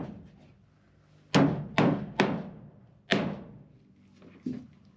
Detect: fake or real real